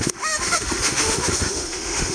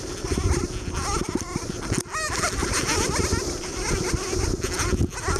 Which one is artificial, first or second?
first